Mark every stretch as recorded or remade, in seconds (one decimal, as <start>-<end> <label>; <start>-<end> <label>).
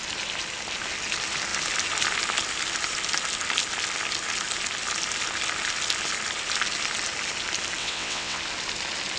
0.0-7.8 recorded; 7.8-8.4 remade; 8.4-9.2 recorded